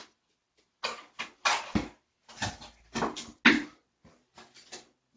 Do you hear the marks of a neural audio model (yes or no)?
no